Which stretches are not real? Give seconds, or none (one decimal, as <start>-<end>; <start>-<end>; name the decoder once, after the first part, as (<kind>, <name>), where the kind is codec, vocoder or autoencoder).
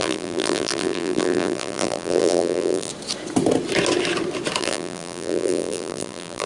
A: 0.0-2.9 (vocoder, BigVGAN v2); 4.6-6.5